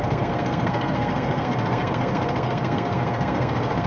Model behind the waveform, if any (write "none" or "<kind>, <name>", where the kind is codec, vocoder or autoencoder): codec, SNAC